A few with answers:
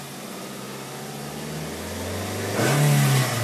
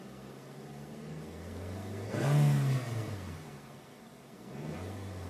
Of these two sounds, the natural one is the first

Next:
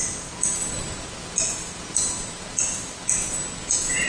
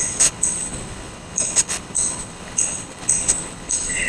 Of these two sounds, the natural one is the first